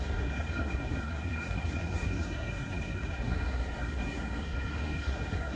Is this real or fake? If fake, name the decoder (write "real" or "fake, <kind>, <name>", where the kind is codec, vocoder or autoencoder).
fake, codec, SNAC